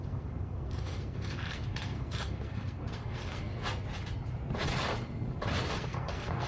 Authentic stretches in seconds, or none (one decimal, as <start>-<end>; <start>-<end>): 3.5-5.7